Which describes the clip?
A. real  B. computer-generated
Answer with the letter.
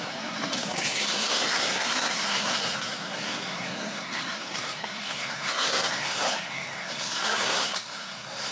B